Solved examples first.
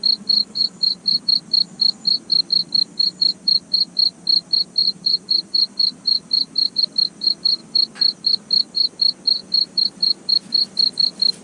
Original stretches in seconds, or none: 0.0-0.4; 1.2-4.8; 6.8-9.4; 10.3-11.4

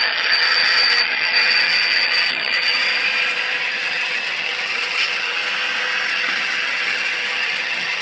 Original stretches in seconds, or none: 2.9-3.6; 5.4-6.1

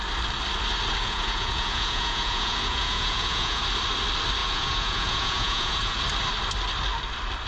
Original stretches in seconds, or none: 0.0-1.0; 3.6-4.4; 6.0-7.5

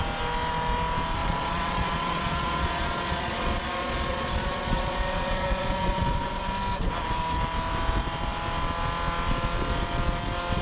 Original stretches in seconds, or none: 0.0-1.2; 6.5-10.6